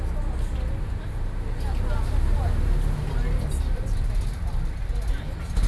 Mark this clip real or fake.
real